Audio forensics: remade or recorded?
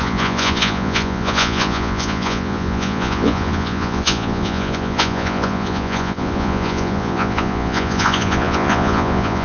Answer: remade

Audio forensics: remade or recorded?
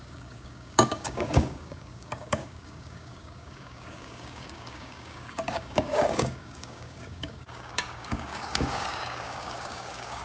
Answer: remade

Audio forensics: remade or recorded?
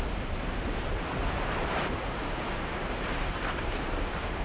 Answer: remade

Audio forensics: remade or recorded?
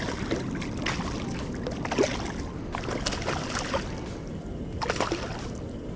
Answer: recorded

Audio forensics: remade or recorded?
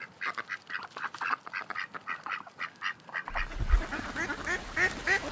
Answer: recorded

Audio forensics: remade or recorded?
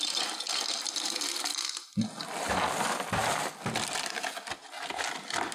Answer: recorded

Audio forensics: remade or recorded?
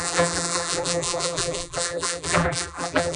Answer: remade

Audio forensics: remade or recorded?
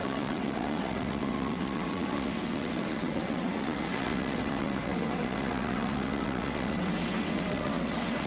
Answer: remade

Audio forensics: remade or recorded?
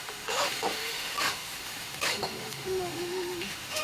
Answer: remade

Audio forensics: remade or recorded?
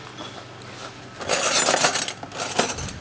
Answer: recorded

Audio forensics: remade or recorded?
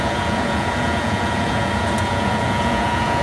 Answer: remade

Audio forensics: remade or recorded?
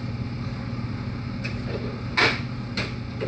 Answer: recorded